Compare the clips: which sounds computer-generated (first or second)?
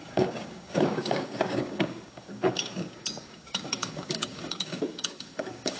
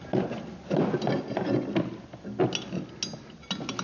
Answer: first